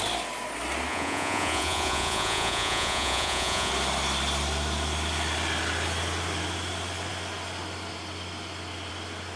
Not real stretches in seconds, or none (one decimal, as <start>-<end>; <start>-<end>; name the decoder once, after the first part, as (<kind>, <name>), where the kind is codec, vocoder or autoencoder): 0.9-3.7 (vocoder, Vocos)